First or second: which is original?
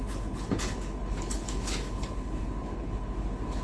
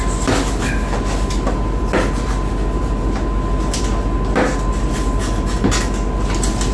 second